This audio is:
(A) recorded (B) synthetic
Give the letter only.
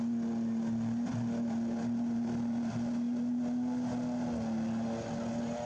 A